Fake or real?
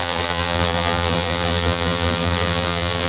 fake